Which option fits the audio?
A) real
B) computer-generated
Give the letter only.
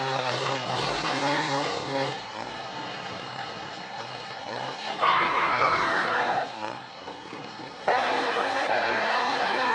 B